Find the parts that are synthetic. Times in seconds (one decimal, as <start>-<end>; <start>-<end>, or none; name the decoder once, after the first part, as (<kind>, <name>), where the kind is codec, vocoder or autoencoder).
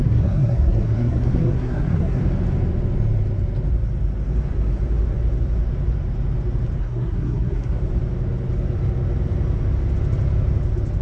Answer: 0.0-2.2 (codec, SNAC); 6.8-7.8